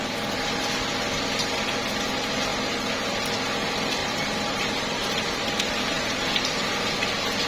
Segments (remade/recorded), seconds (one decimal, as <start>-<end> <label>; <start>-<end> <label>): 0.0-4.0 recorded; 4.0-6.3 remade; 6.3-7.5 recorded